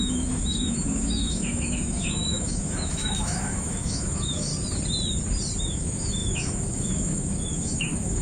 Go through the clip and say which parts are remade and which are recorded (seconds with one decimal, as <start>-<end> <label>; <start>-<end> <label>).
0.0-4.5 remade; 4.5-5.7 recorded; 5.7-8.2 remade